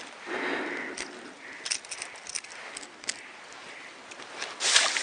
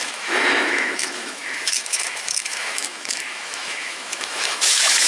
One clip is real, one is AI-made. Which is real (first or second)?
first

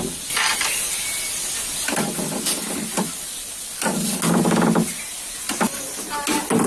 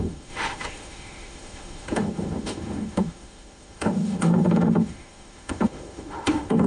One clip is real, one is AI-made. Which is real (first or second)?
first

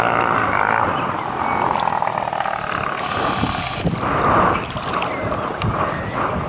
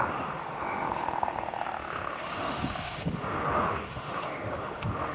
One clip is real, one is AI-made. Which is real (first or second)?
first